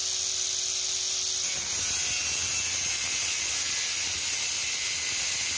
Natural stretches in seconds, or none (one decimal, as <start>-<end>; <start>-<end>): 0.0-5.6